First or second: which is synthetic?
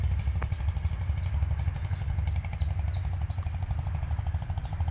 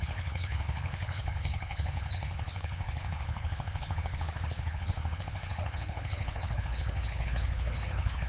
second